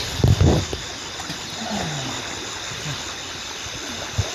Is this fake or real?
real